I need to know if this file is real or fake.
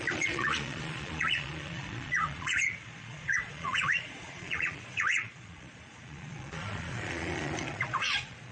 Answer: fake